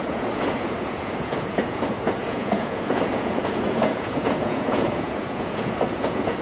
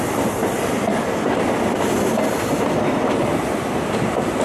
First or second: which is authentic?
second